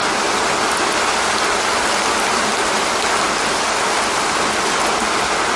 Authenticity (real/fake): real